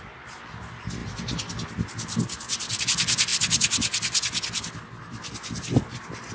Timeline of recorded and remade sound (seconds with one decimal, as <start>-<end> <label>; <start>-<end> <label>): 0.0-6.3 recorded